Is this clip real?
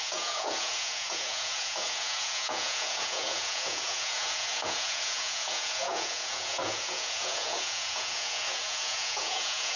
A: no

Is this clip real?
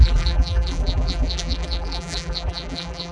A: no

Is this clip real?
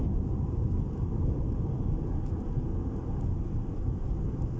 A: yes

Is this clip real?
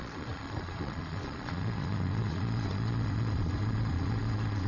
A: no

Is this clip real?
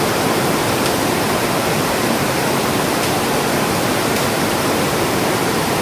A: no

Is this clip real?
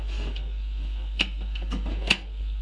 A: no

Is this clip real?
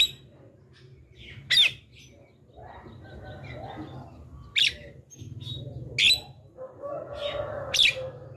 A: yes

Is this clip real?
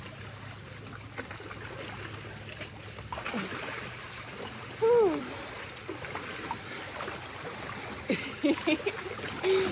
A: yes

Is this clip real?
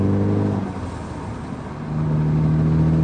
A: yes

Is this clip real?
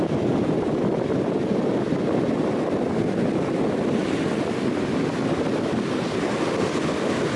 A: yes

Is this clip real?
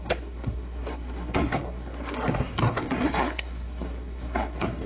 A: no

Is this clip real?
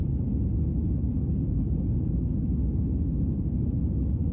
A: yes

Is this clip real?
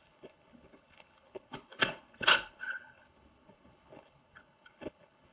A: no